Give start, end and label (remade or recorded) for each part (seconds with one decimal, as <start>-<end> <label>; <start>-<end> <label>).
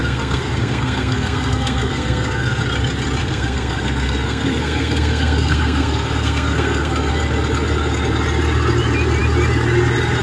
0.0-2.6 remade; 2.6-3.2 recorded; 3.2-7.1 remade; 7.1-10.2 recorded